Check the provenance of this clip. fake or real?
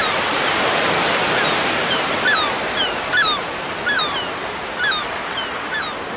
fake